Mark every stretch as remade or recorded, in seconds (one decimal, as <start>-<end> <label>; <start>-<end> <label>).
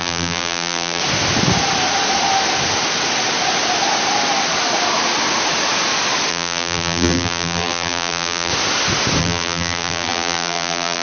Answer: 0.0-1.0 remade; 1.0-6.3 recorded; 6.3-8.5 remade; 8.5-9.2 recorded; 9.2-11.0 remade